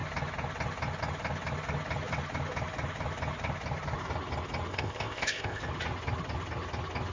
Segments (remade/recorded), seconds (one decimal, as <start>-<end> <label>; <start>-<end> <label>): 0.0-4.7 recorded; 4.7-5.6 remade; 5.6-7.1 recorded